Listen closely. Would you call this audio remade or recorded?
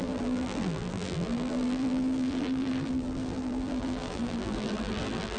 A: remade